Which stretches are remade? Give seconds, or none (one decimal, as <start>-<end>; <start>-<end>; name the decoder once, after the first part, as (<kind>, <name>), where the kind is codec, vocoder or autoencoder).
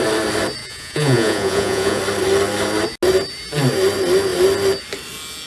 0.6-2.0 (vocoder, Vocos)